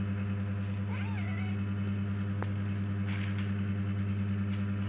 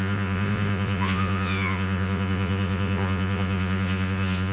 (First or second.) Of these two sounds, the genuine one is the first